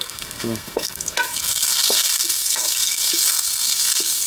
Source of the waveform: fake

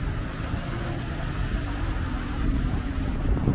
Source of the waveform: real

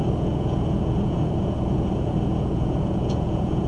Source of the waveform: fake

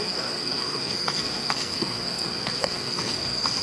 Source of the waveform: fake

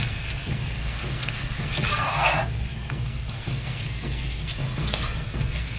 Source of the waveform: fake